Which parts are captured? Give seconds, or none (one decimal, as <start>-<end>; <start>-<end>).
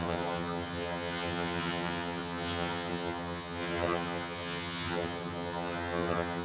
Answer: none